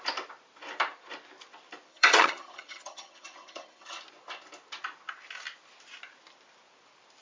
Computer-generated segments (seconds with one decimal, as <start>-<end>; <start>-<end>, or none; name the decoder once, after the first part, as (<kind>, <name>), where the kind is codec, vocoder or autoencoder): 1.9-4.0 (vocoder, HiFi-GAN)